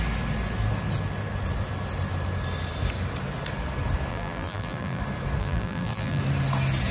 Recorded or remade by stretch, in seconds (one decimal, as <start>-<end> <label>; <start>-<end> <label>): 0.0-4.1 recorded; 4.1-5.0 remade; 5.0-5.4 recorded; 5.4-6.2 remade; 6.2-6.9 recorded